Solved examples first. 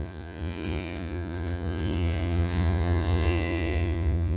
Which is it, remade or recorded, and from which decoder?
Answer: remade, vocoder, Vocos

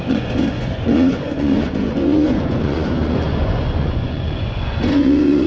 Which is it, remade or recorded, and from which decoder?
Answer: remade, vocoder, Vocos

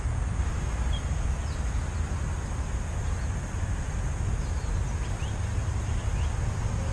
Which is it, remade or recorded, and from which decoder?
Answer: recorded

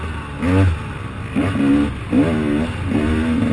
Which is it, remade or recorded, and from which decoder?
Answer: recorded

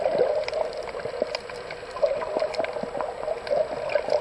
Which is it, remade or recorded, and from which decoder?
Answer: recorded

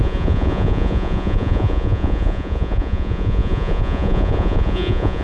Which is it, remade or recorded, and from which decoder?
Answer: remade, vocoder, Vocos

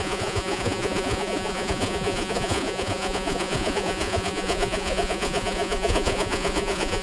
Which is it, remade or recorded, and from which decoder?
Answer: remade, vocoder, Vocos